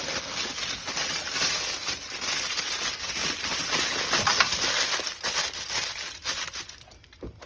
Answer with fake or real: real